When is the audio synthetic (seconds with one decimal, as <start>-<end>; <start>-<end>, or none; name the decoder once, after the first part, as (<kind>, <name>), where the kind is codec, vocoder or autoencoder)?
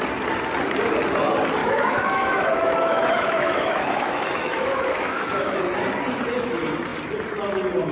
1.6-5.6 (autoencoder, DAC-VAE)